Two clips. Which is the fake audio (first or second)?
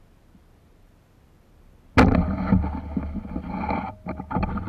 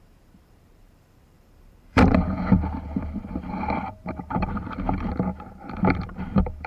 second